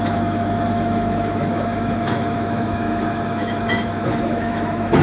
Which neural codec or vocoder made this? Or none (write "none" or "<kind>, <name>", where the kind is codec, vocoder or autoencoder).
autoencoder, DAC-VAE